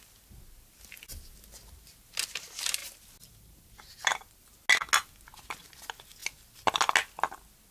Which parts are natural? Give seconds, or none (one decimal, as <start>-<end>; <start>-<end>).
0.0-7.7